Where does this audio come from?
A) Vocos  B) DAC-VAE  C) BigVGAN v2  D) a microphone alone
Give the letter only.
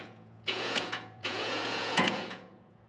A